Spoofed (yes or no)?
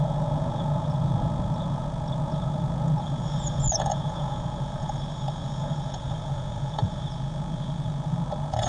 yes